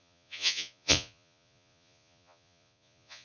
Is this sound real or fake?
fake